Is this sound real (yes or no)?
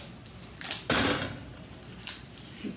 yes